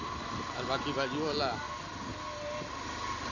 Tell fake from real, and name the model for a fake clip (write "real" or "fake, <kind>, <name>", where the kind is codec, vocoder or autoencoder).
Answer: real